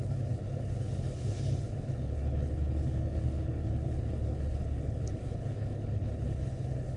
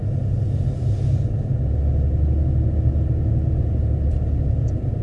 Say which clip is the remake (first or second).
first